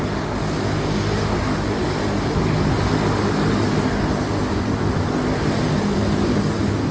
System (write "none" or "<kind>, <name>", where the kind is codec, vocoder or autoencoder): none